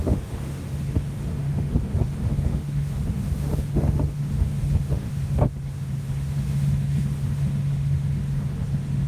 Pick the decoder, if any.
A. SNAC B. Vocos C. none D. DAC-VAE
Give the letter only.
D